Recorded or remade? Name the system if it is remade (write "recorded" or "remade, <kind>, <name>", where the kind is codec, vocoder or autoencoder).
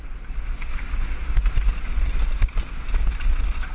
recorded